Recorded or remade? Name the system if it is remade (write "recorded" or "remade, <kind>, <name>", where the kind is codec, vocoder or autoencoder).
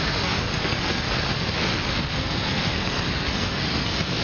remade, codec, SNAC